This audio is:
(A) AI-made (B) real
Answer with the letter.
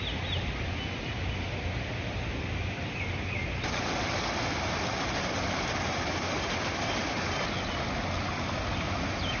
B